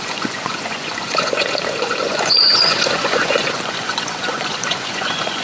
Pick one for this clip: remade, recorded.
remade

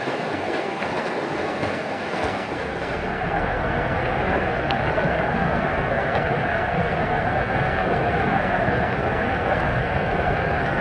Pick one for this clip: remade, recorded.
remade